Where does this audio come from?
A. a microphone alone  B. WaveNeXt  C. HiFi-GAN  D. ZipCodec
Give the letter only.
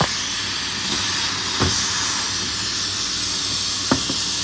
A